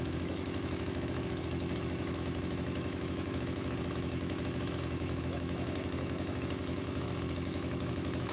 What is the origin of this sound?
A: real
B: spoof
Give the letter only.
B